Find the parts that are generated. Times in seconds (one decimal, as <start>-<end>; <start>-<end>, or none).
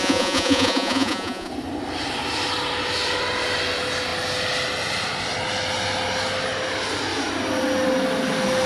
0.0-1.5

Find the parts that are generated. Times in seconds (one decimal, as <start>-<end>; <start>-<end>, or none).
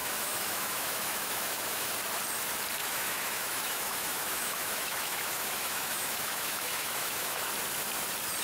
0.0-1.9; 2.8-7.5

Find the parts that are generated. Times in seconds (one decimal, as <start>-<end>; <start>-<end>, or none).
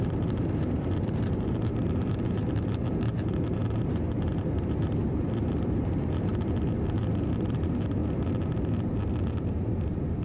0.0-6.3; 7.3-8.0; 9.2-10.2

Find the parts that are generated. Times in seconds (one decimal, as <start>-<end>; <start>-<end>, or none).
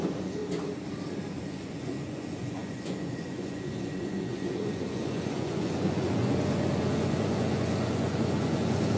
0.0-0.4; 1.5-9.0